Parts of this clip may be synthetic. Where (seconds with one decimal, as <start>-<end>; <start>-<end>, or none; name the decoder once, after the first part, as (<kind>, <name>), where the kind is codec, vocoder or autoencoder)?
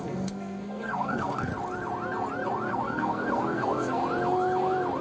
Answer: 0.0-1.5 (codec, SNAC); 2.7-4.0